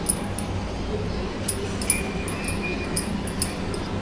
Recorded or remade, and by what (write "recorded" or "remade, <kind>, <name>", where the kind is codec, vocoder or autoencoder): recorded